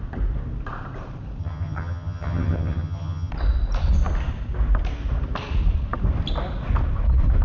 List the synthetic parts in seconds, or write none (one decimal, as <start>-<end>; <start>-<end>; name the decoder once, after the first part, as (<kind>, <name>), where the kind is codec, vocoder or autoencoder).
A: 1.4-3.3 (vocoder, HiFi-GAN)